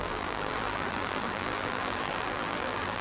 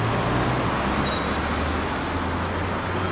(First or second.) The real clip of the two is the second